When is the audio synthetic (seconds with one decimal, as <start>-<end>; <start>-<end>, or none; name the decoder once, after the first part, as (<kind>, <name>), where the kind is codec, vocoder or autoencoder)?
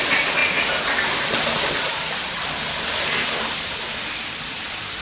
none